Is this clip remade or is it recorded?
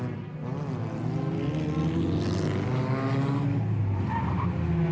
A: recorded